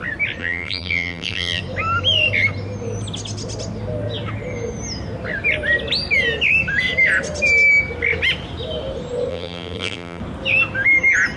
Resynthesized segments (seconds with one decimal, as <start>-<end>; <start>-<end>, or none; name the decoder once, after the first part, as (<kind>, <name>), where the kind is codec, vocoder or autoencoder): 0.4-1.6 (vocoder, BigVGAN v2); 9.3-10.2

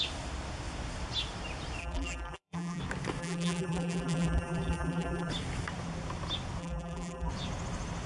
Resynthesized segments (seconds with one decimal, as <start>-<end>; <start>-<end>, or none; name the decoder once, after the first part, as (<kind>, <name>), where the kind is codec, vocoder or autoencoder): 1.8-2.8 (vocoder, BigVGAN v2); 3.2-5.3; 6.6-7.3

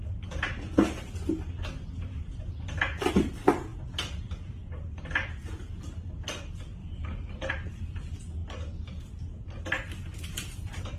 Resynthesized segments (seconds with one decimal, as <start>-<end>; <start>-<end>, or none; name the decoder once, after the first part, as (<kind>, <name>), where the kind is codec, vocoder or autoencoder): 6.8-7.5 (vocoder, BigVGAN v2)

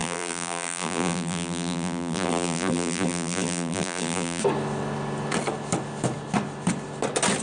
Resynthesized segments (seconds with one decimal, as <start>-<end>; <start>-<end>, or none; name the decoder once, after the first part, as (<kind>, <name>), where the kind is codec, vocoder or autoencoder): 0.0-4.4 (vocoder, BigVGAN v2)

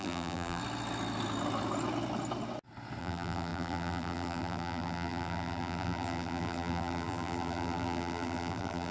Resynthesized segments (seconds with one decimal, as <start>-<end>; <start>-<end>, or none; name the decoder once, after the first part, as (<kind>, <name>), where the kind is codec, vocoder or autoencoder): 0.0-0.6 (vocoder, BigVGAN v2); 3.0-8.9